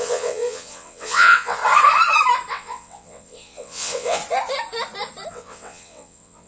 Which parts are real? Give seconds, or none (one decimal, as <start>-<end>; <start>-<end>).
1.6-2.5; 4.2-5.3